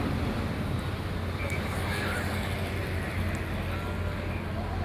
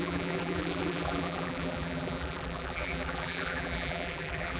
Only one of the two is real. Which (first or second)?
first